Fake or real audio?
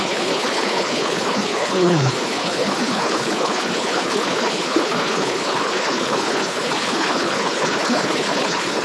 fake